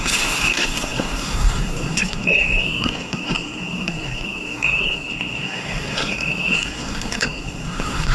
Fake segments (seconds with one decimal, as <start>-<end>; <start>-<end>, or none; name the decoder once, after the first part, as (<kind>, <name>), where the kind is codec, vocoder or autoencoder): 0.0-8.1 (codec, SNAC)